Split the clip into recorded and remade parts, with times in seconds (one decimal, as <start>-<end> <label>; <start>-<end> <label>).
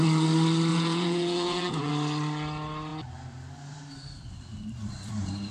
0.0-0.7 recorded; 0.7-1.9 remade; 1.9-5.5 recorded